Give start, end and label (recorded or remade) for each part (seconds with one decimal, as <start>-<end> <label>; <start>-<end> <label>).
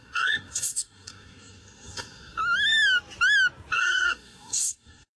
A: 0.0-2.4 remade; 2.4-3.7 recorded; 3.7-5.2 remade